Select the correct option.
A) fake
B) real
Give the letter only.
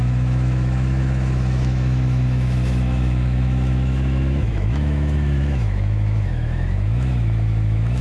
A